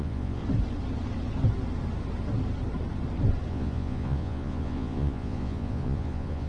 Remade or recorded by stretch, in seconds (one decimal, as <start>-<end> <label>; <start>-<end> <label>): 0.0-0.4 remade; 0.4-3.5 recorded; 3.5-6.5 remade